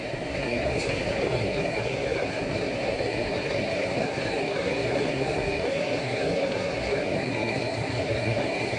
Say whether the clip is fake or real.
fake